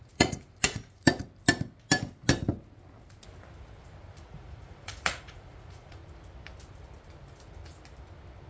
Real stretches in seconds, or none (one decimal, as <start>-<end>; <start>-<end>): 1.2-4.2; 6.0-8.5